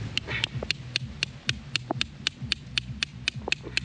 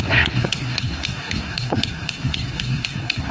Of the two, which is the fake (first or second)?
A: second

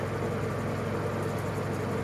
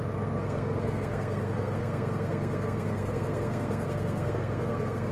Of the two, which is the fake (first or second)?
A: second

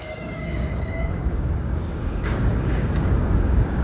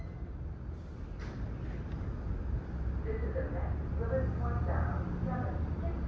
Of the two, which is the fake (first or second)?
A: first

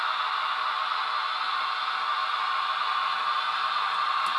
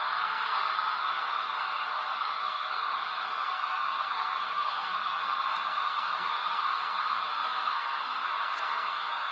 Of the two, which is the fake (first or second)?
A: second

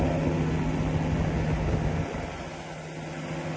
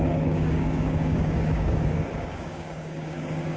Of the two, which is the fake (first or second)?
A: second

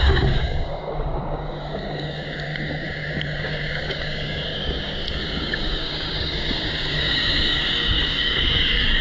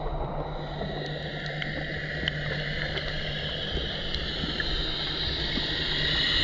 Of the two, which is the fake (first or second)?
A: first